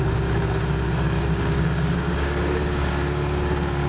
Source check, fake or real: fake